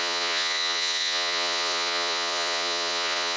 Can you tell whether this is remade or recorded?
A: remade